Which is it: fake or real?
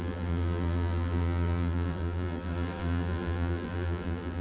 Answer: fake